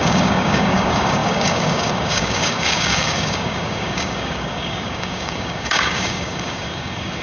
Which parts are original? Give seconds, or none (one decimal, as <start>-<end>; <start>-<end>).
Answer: none